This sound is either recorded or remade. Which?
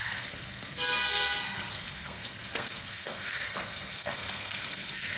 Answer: remade